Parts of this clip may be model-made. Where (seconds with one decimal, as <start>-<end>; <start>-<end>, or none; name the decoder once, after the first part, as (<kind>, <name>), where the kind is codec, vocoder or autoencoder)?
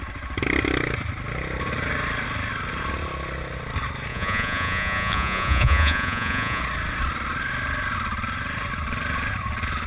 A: 4.1-6.6 (vocoder, Vocos)